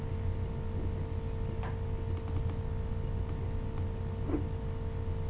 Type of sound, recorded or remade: recorded